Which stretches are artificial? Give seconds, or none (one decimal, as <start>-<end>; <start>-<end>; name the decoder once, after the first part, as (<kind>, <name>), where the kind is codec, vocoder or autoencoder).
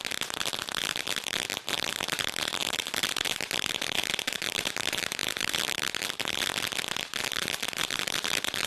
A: 0.0-6.5 (vocoder, BigVGAN v2); 7.2-8.7